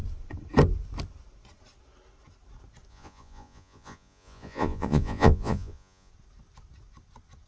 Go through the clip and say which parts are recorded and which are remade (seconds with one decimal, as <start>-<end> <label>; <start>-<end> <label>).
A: 0.0-2.9 recorded; 2.9-6.1 remade; 6.1-7.5 recorded